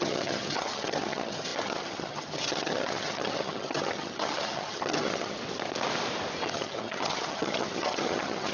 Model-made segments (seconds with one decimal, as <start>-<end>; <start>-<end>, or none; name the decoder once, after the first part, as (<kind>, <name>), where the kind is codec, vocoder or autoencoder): 0.0-5.4 (vocoder, HiFi-GAN); 6.5-8.5